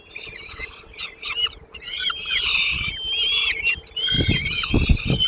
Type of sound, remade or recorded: recorded